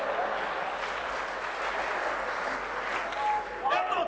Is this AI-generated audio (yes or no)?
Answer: no